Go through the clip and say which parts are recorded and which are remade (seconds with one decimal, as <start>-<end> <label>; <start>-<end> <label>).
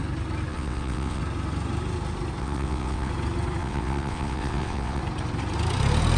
0.0-0.5 recorded; 0.5-1.2 remade; 1.2-2.4 recorded; 2.4-3.1 remade; 3.1-3.6 recorded; 3.6-5.0 remade; 5.0-6.2 recorded